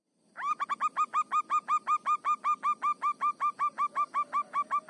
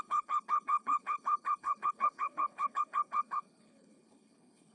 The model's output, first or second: second